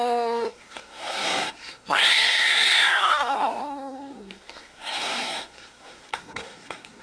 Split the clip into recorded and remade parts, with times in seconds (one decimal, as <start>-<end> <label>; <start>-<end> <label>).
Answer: 0.0-7.0 remade